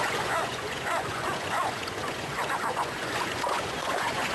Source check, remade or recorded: remade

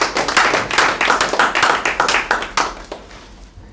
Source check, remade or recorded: recorded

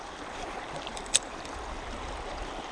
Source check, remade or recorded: remade